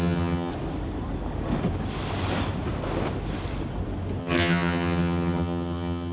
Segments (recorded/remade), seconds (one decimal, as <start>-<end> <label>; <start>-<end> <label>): 0.0-0.5 remade; 0.5-4.2 recorded; 4.2-6.1 remade

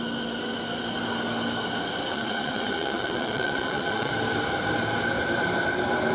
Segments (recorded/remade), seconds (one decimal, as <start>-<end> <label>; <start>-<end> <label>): 0.0-2.1 recorded; 2.1-4.1 remade; 4.1-6.1 recorded